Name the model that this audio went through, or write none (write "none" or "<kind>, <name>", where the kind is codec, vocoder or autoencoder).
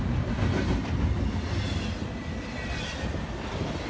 none